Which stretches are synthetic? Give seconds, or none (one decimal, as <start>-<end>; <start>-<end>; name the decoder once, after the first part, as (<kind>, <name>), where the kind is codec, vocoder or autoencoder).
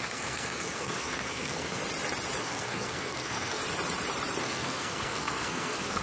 0.0-1.8 (codec, SNAC); 2.4-3.6; 4.4-6.0